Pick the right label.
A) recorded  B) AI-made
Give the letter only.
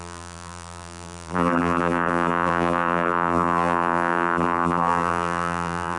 B